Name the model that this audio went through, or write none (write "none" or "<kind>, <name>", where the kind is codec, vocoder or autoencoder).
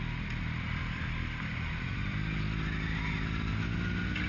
none